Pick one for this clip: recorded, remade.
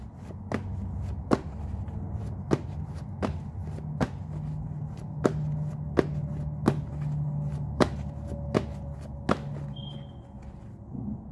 recorded